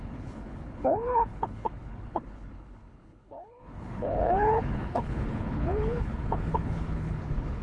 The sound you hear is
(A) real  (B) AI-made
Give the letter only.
B